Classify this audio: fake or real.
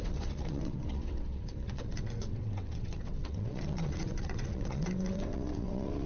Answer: fake